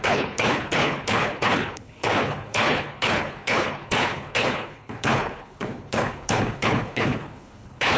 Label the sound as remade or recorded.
remade